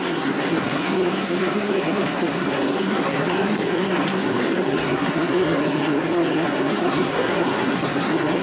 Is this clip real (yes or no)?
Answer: no